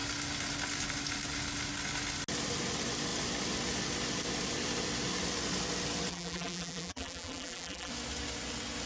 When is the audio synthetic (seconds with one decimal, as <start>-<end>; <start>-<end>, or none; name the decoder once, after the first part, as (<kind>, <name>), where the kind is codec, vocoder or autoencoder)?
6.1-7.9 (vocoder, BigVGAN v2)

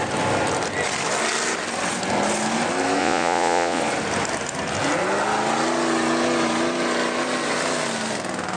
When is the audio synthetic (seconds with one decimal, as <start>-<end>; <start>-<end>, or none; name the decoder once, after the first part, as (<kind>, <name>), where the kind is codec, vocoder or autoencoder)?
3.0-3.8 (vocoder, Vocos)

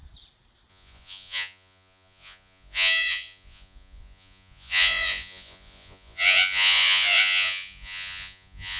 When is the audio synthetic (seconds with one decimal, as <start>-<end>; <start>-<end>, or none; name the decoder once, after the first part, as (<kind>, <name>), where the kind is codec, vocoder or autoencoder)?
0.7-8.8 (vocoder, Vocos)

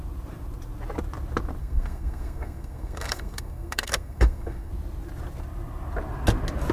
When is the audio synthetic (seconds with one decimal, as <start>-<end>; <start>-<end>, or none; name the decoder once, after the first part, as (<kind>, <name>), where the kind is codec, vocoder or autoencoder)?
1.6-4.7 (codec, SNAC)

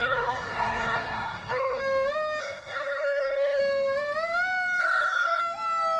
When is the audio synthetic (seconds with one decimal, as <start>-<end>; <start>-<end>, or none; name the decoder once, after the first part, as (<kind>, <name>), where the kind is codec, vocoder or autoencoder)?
0.0-1.8 (codec, SNAC); 2.4-3.6; 4.8-5.4